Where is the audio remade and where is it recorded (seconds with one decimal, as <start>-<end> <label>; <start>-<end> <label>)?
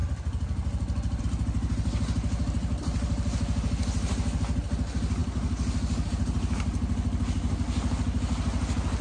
0.0-9.0 recorded